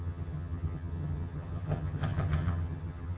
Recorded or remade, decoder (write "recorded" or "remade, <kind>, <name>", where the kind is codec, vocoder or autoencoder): remade, vocoder, HiFi-GAN